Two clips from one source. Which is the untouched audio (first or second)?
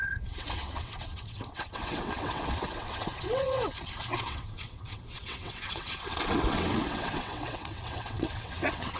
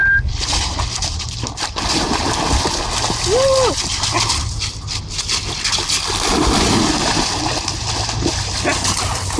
second